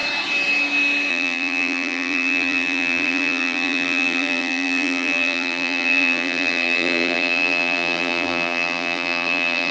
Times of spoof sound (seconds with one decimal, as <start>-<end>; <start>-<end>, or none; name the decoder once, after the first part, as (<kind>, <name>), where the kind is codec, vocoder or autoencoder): 1.1-9.7 (vocoder, BigVGAN v2)